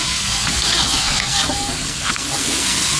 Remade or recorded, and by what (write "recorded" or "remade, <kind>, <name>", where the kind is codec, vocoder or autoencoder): remade, codec, SNAC